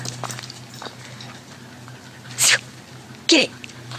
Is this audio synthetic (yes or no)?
no